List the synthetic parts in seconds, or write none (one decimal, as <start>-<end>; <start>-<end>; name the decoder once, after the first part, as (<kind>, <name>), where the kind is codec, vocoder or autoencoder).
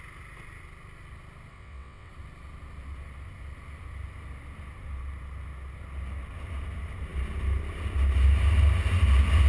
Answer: 1.5-2.1 (vocoder, WaveNeXt)